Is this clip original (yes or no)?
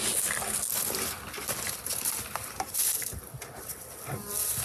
yes